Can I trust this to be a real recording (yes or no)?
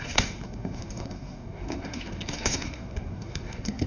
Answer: no